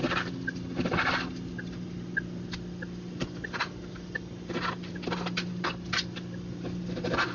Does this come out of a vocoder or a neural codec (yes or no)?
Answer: yes